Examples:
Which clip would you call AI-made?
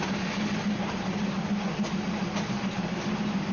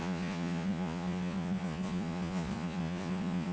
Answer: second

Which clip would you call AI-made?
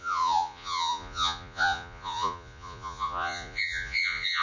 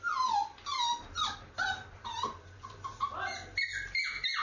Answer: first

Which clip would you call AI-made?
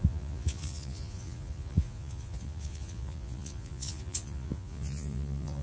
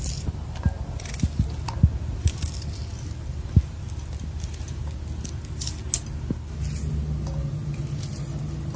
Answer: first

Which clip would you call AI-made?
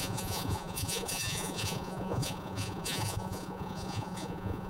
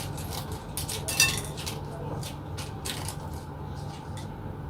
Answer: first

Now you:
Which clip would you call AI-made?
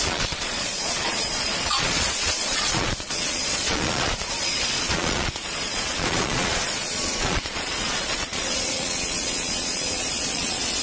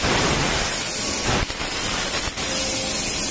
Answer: first